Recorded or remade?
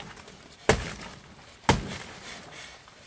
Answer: recorded